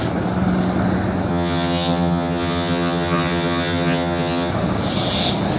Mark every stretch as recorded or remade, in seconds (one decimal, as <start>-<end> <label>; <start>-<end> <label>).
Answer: 0.0-1.3 recorded; 1.3-4.5 remade; 4.5-5.6 recorded